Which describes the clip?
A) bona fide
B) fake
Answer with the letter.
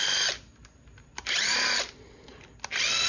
A